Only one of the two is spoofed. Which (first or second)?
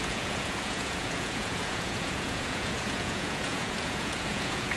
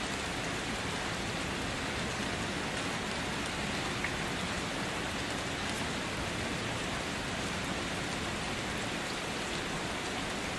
first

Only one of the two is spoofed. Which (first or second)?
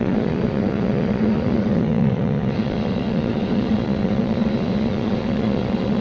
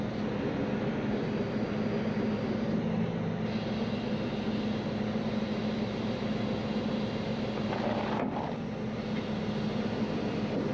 first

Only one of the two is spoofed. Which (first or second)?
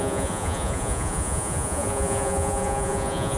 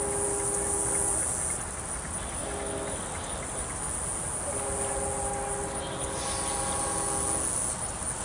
first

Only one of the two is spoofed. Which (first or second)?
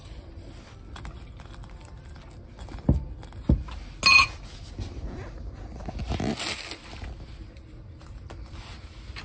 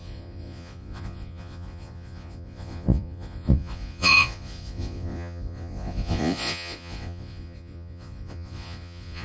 second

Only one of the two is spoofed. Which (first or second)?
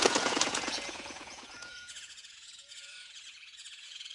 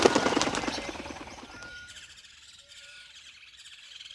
first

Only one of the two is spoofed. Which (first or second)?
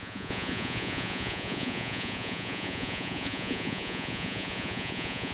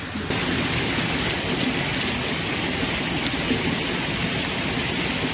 first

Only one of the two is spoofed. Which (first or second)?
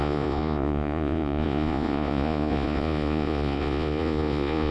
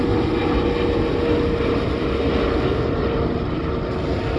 first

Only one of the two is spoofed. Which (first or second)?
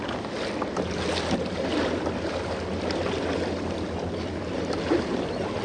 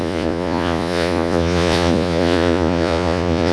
second